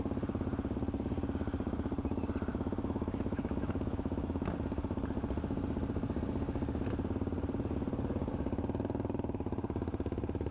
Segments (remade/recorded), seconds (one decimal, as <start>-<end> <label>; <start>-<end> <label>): 0.0-2.5 recorded; 2.5-4.5 remade; 4.5-10.5 recorded